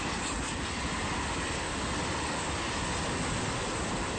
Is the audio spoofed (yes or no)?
no